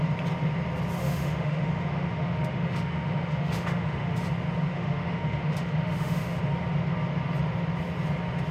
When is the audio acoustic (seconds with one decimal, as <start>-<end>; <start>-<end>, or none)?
0.0-1.0; 4.3-4.7; 6.4-8.5

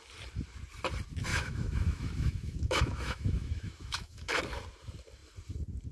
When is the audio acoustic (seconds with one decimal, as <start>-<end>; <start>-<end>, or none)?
0.0-1.3; 4.4-5.9